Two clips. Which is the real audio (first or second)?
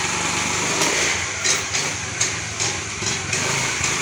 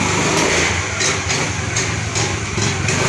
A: second